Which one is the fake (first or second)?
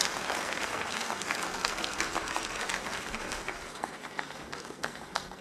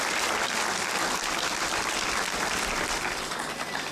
first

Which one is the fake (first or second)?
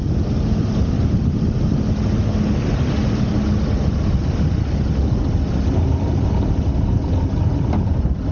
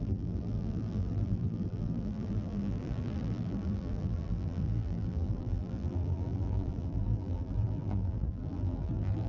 second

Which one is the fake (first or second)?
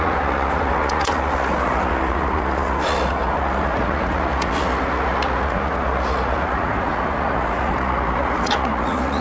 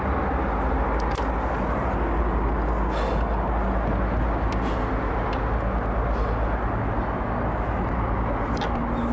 first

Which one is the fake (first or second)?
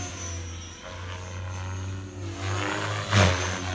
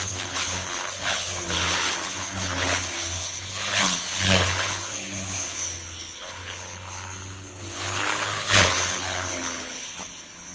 second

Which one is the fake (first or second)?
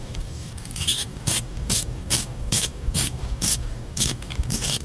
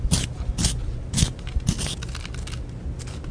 first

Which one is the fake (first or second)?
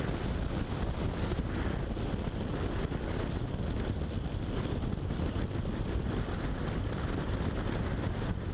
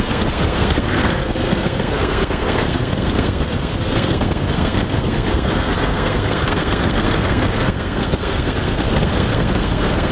second